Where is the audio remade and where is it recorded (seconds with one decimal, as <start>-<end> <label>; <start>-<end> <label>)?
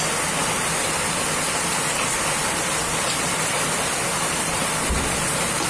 0.0-5.7 recorded